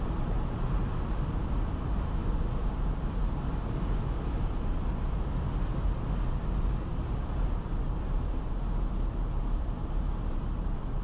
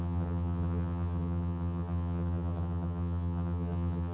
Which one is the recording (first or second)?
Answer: first